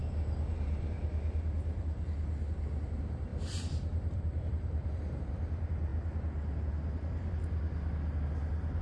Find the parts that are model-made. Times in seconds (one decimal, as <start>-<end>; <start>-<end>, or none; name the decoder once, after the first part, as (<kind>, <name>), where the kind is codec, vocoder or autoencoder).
0.0-5.9 (vocoder, BigVGAN v2)